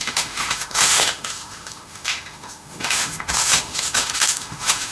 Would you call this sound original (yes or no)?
no